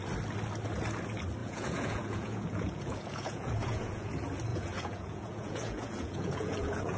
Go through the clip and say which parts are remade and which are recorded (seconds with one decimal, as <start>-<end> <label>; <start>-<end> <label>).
0.0-1.4 recorded; 1.4-4.1 remade; 4.1-4.5 recorded; 4.5-7.0 remade